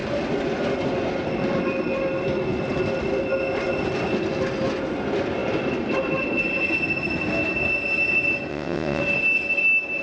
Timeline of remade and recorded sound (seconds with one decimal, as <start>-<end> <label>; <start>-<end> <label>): 0.0-8.5 recorded; 8.5-9.0 remade; 9.0-10.0 recorded